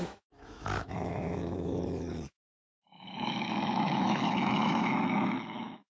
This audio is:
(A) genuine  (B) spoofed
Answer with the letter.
B